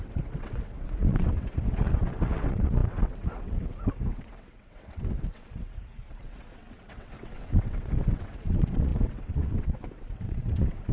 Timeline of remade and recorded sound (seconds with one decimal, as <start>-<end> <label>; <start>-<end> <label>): 0.0-10.9 remade